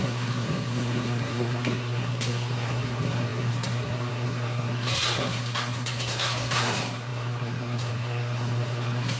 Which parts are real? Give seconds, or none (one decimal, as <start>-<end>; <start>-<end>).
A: none